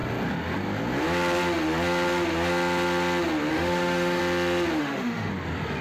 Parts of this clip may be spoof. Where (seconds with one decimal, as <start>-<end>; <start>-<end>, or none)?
3.5-4.2; 4.8-5.3